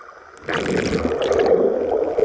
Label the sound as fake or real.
real